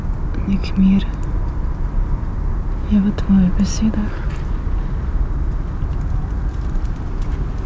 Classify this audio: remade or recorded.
recorded